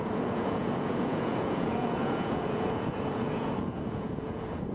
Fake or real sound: fake